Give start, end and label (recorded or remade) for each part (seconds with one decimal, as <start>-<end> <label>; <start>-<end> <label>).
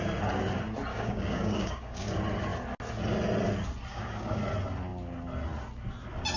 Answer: 0.0-0.9 recorded; 0.9-2.1 remade; 2.1-3.9 recorded; 3.9-4.4 remade; 4.4-6.4 recorded